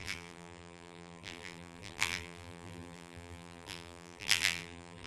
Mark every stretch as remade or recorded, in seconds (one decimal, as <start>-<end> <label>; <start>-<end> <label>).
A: 0.0-5.1 remade